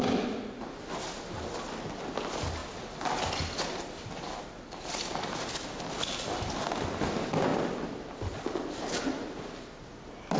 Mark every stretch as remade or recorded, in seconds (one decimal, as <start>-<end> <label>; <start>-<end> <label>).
0.0-10.4 recorded